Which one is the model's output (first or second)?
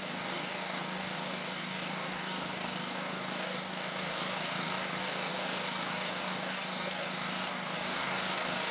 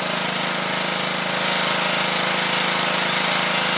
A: first